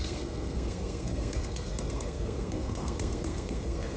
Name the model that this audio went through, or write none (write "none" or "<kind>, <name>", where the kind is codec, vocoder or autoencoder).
codec, SNAC